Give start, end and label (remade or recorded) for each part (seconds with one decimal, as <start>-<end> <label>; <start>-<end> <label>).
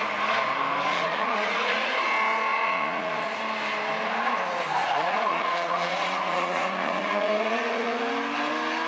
0.0-0.9 recorded; 0.9-2.0 remade; 2.0-2.5 recorded; 2.5-3.4 remade; 3.4-4.8 recorded; 4.8-8.0 remade; 8.0-8.9 recorded